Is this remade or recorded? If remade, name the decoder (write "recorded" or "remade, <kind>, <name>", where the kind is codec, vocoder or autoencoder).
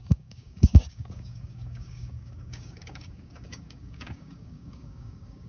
remade, codec, DAC